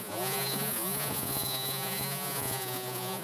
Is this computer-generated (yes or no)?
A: yes